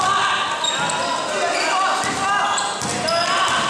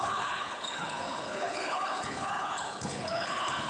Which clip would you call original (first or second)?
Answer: first